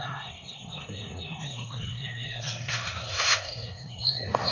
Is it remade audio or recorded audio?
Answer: remade